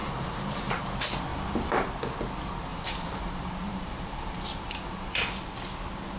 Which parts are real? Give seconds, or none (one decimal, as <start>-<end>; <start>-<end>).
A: 0.8-1.3; 1.9-2.7; 5.2-6.2